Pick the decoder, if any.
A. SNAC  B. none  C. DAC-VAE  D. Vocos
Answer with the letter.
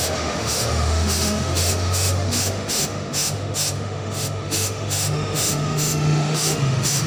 C